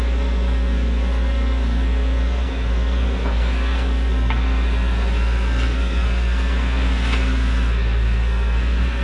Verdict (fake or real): fake